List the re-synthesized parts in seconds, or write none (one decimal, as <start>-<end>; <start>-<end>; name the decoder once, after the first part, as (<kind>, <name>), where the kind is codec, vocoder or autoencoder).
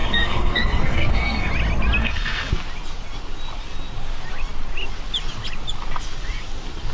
0.0-1.5 (codec, SNAC); 2.0-2.5